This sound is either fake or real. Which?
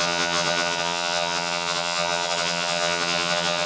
fake